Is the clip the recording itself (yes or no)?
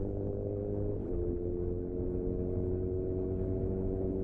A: no